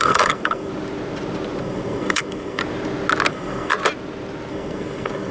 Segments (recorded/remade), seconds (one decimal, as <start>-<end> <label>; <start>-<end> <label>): 0.0-0.7 remade; 0.7-1.6 recorded; 1.6-2.6 remade; 2.6-3.3 recorded; 3.3-3.7 remade; 3.7-4.5 recorded; 4.5-5.3 remade